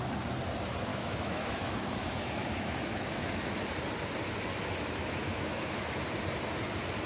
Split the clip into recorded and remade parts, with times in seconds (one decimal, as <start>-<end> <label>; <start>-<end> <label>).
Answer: 0.0-0.9 recorded; 0.9-3.5 remade; 3.5-5.0 recorded; 5.0-5.8 remade; 5.8-7.1 recorded